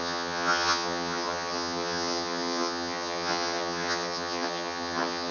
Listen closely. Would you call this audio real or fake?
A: fake